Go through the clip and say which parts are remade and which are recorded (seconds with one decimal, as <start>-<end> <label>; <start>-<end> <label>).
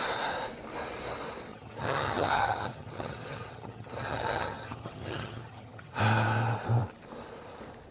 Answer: 0.0-1.5 recorded; 1.5-6.0 remade; 6.0-7.9 recorded